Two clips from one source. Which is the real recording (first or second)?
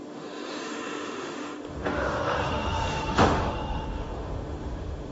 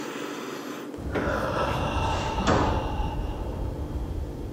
second